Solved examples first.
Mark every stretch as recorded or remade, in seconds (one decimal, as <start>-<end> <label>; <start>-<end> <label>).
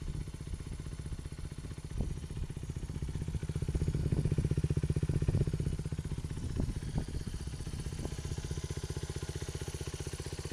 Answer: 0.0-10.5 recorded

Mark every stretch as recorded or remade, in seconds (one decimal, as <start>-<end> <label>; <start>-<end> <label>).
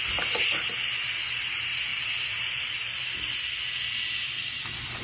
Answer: 0.0-5.0 remade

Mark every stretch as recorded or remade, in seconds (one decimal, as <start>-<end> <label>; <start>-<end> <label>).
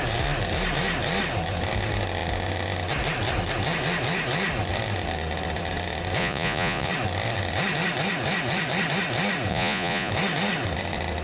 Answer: 0.0-6.2 recorded; 6.2-6.9 remade; 6.9-9.5 recorded; 9.5-10.1 remade; 10.1-11.2 recorded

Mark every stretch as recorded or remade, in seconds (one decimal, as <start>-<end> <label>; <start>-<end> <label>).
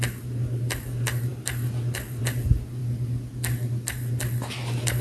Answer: 0.0-5.0 recorded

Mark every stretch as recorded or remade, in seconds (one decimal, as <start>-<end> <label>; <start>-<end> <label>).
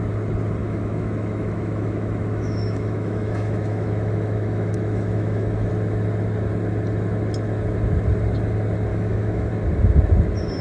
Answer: 0.0-0.6 recorded; 0.6-5.7 remade; 5.7-8.9 recorded; 8.9-9.5 remade; 9.5-10.6 recorded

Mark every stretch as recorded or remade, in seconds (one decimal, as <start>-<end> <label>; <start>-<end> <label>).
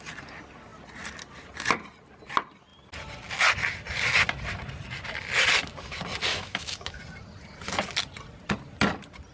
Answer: 0.0-6.3 recorded; 6.3-7.0 remade; 7.0-9.3 recorded